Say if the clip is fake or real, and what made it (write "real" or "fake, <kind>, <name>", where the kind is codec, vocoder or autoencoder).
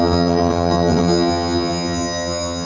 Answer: fake, vocoder, HiFi-GAN